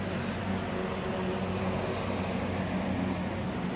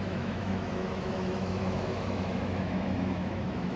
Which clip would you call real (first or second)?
first